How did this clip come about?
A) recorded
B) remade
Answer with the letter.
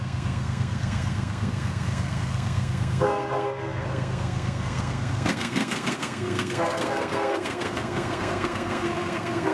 B